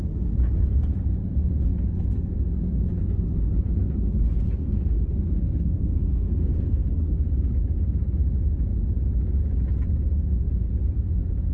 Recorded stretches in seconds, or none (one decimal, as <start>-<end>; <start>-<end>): 0.0-4.6; 7.0-11.5